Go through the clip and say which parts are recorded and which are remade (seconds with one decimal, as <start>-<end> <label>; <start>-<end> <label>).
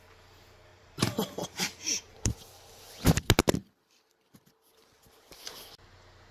0.0-0.7 recorded; 0.7-2.8 remade; 2.8-6.3 recorded